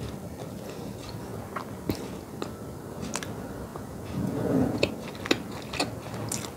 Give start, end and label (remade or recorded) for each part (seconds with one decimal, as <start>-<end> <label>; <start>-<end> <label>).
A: 0.0-3.7 recorded; 3.7-4.9 remade; 4.9-6.6 recorded